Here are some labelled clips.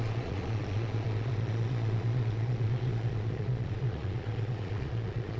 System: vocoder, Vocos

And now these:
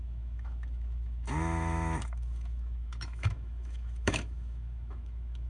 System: autoencoder, DAC-VAE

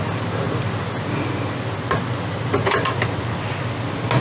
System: none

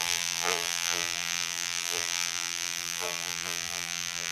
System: vocoder, BigVGAN v2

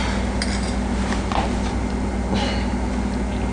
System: none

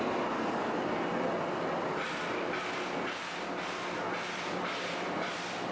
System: none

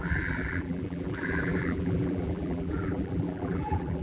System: vocoder, BigVGAN v2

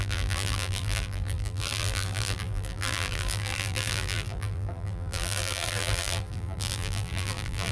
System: vocoder, BigVGAN v2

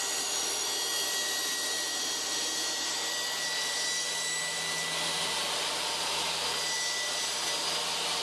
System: none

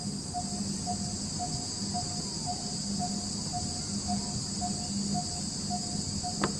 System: none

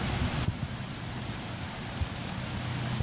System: none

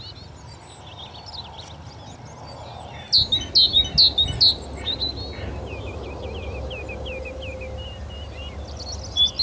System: none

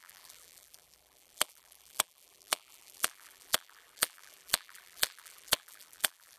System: vocoder, BigVGAN v2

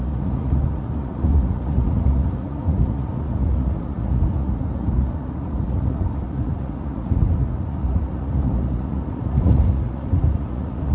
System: vocoder, Vocos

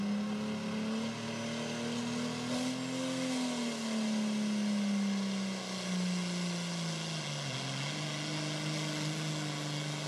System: none